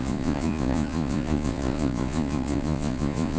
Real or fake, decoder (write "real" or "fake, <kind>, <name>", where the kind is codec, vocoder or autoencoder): fake, vocoder, Vocos